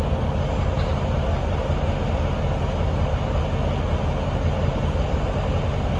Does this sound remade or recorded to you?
recorded